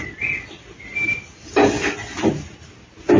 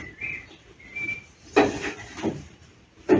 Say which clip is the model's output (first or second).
second